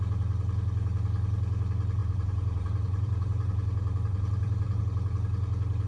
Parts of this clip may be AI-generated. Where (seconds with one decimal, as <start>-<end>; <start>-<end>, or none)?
2.0-4.8